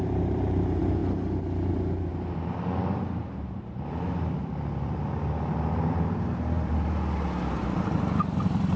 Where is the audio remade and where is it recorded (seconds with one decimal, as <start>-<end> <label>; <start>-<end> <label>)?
0.0-1.0 remade; 1.0-1.7 recorded; 1.7-2.1 remade; 2.1-3.4 recorded; 3.4-4.4 remade; 4.4-5.9 recorded; 5.9-8.8 remade